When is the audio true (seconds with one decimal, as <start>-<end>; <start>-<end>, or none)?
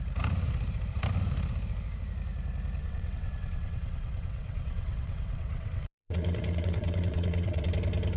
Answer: 0.0-2.8; 7.7-8.2